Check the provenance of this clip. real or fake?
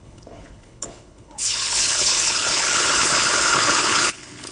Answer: fake